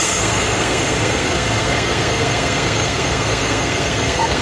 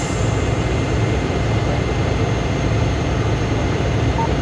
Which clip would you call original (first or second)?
second